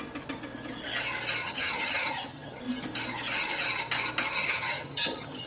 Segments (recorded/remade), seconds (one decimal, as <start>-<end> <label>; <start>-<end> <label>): 0.0-1.4 recorded; 1.4-2.6 remade; 2.6-4.4 recorded; 4.4-5.5 remade